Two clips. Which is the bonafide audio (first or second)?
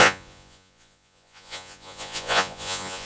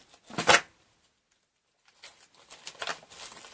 second